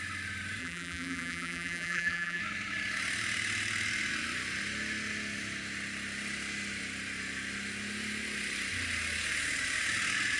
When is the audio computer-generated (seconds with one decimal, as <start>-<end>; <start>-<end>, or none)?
0.6-2.4